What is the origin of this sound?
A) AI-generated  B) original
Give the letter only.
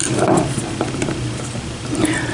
B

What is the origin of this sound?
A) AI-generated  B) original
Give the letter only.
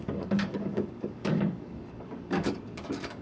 A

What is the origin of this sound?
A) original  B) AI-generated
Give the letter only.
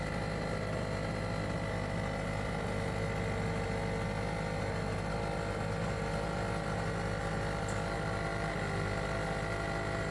A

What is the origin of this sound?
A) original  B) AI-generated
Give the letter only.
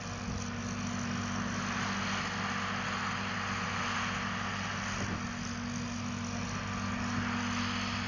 A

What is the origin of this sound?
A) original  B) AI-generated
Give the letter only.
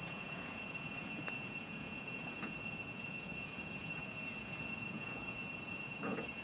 B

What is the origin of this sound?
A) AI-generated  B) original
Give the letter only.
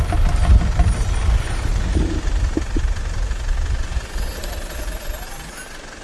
B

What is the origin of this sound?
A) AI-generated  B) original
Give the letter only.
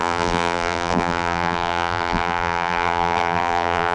A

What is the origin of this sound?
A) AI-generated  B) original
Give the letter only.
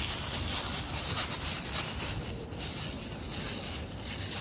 B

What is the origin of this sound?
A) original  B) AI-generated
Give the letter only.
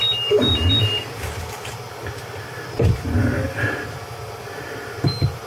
B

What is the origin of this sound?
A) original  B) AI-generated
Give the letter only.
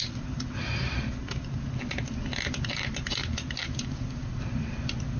A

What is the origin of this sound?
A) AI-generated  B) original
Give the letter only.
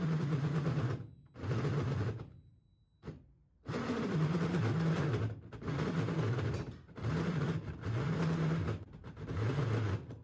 B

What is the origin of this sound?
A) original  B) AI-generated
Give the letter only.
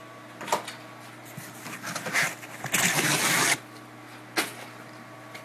A